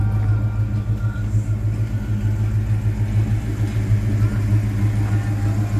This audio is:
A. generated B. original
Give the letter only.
B